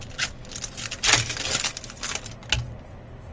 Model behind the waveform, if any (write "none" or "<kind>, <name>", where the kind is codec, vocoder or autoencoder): none